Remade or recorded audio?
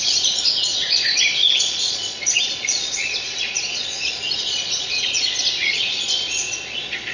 remade